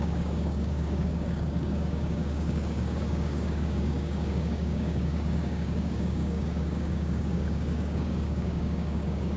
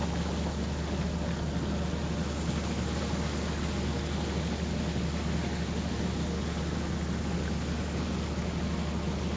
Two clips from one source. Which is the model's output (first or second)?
first